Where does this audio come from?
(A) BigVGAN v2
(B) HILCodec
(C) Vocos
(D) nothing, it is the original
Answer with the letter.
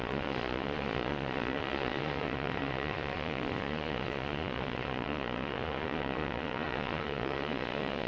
C